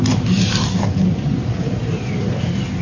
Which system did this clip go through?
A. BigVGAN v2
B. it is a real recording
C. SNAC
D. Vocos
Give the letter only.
B